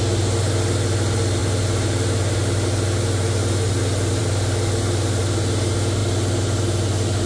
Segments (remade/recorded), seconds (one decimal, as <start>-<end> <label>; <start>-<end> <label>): 0.0-7.3 recorded